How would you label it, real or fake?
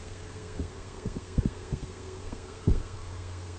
fake